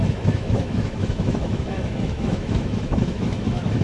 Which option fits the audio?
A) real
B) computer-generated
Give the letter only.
B